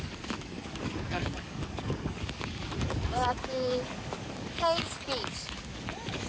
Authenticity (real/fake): fake